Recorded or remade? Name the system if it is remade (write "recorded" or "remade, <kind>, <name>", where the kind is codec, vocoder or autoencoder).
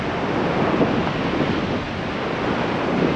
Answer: recorded